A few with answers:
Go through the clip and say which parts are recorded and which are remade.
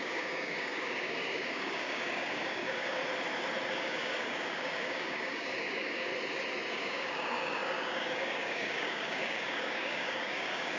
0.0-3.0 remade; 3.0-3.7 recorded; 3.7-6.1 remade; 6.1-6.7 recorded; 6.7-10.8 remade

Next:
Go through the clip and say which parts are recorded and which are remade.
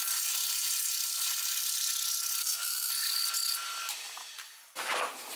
0.0-2.4 recorded; 2.4-2.9 remade; 2.9-5.4 recorded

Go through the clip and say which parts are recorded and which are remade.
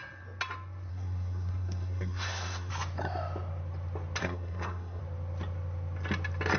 0.0-0.9 recorded; 0.9-2.7 remade; 2.7-4.2 recorded; 4.2-5.0 remade; 5.0-6.6 recorded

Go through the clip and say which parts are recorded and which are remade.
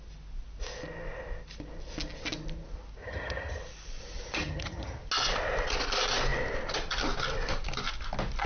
0.0-3.0 recorded; 3.0-3.6 remade; 3.6-4.4 recorded; 4.4-5.0 remade; 5.0-8.5 recorded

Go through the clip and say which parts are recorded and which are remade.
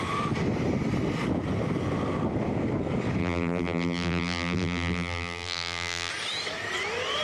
0.0-3.2 recorded; 3.2-6.1 remade; 6.1-7.2 recorded